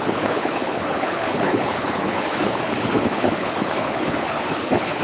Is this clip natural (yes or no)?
no